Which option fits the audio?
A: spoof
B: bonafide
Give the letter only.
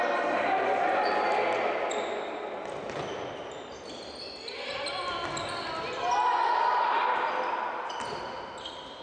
B